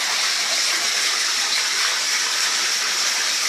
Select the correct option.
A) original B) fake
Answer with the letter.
B